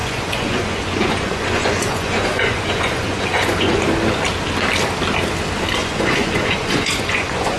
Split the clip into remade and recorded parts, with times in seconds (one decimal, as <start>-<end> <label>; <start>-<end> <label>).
0.0-3.8 remade; 3.8-5.8 recorded; 5.8-7.6 remade